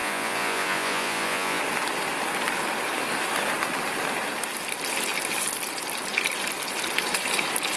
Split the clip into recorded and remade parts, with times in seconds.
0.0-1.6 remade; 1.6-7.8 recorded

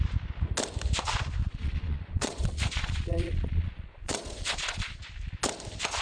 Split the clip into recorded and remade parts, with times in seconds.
0.0-1.4 recorded; 1.4-5.0 remade; 5.0-6.0 recorded